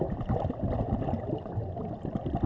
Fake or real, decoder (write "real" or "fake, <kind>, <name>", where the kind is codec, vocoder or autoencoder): real